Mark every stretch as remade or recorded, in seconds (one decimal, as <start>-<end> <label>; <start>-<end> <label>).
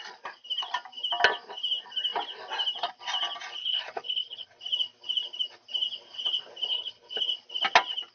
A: 0.0-3.6 recorded; 3.6-4.6 remade; 4.6-6.7 recorded; 6.7-7.2 remade; 7.2-8.1 recorded